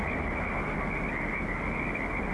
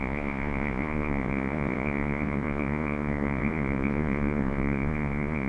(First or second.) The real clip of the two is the first